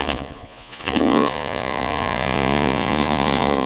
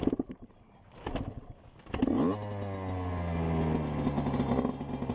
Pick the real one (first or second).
second